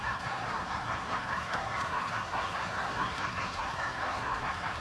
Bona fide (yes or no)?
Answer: no